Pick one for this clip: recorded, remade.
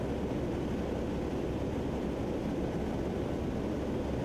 recorded